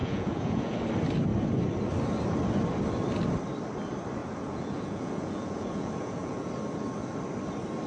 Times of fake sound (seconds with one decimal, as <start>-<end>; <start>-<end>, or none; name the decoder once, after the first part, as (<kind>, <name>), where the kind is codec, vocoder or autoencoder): 0.0-0.8 (vocoder, Vocos); 4.2-6.5